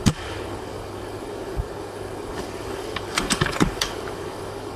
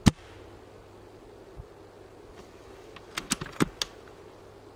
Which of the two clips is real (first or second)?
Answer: second